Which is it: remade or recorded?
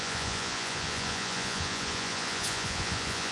remade